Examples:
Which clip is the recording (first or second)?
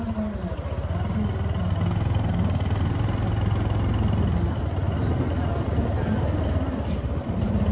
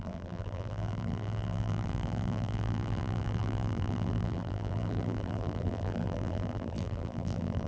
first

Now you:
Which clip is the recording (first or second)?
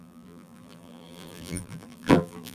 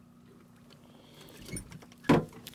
second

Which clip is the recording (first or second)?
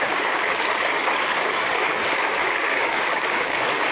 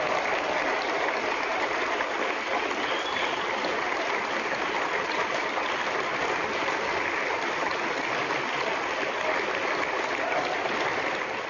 second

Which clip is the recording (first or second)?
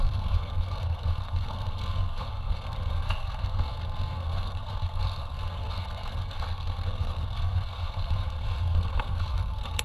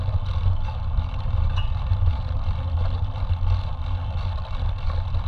second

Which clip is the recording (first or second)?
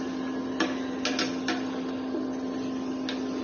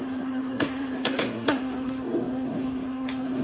first